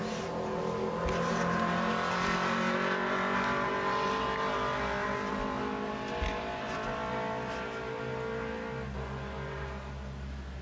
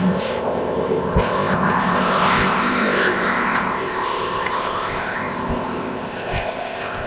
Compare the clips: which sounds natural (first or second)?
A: first